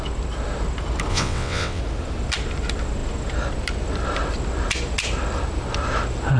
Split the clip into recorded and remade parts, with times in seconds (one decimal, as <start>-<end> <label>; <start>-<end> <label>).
0.0-1.1 recorded; 1.1-1.8 remade; 1.8-6.4 recorded